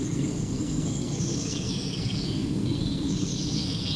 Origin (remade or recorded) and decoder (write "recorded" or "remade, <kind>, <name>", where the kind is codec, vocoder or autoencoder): remade, codec, SNAC